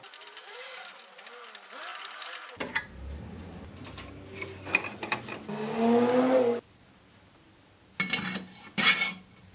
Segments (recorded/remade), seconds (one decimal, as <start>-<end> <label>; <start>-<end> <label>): 0.0-9.5 recorded